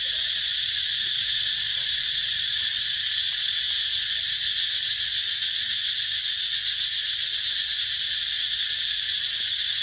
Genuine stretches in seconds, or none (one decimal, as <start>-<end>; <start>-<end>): 0.0-0.5; 3.0-9.8